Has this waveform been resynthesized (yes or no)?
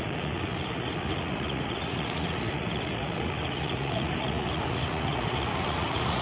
yes